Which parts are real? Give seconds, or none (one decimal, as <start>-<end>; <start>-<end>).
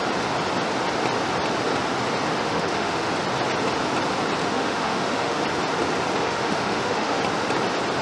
0.0-2.4; 3.1-4.4; 5.4-6.2; 7.2-8.0